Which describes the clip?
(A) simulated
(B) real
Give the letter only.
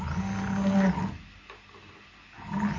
B